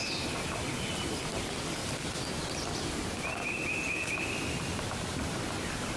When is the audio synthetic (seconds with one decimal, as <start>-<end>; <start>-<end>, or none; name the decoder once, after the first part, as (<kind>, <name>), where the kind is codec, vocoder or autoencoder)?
none